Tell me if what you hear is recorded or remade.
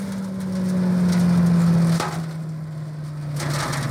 recorded